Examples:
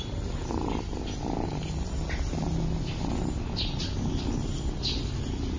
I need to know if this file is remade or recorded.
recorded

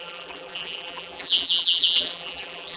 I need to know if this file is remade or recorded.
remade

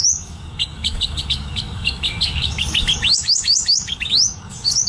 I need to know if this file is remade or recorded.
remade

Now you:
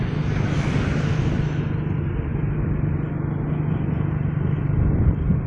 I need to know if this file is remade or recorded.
recorded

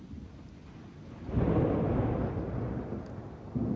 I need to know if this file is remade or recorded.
recorded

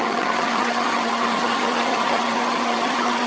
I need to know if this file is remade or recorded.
remade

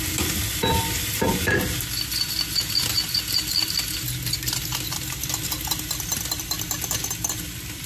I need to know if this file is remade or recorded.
recorded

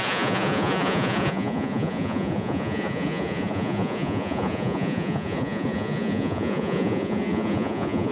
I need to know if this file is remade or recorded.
remade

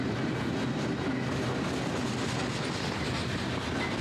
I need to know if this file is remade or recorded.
recorded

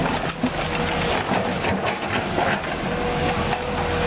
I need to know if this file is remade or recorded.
recorded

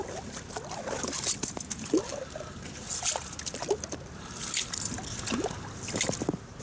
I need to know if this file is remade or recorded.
recorded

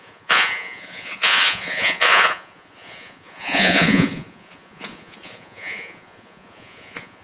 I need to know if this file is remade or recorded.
remade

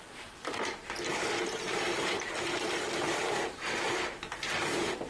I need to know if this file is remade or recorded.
remade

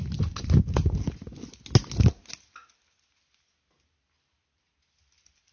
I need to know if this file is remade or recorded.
recorded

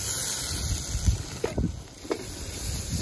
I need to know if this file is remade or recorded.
recorded